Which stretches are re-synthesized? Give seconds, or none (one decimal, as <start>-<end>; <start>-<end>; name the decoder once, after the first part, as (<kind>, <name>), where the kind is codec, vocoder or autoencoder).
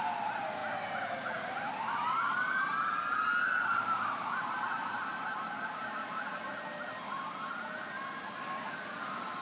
none